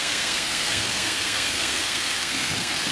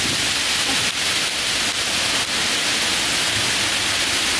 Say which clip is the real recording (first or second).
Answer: second